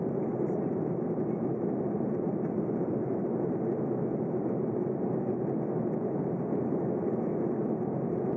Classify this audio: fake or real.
real